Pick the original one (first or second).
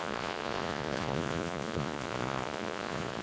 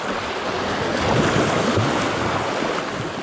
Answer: second